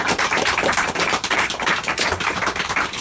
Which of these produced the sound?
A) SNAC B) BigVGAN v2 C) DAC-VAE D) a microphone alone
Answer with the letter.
B